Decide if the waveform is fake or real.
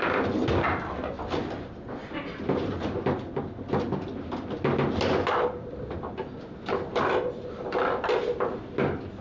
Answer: real